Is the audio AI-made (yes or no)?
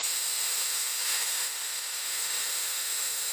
yes